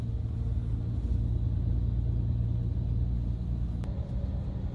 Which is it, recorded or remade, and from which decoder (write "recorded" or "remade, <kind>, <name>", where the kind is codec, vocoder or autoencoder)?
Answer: recorded